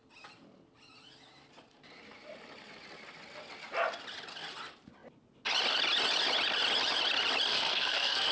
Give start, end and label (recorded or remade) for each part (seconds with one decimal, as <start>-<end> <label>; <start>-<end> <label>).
0.0-7.5 recorded; 7.5-8.3 remade